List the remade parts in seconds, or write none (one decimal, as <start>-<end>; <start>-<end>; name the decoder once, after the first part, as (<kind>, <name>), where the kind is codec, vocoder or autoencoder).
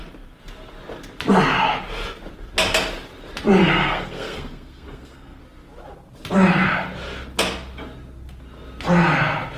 3.6-5.4 (codec, SNAC)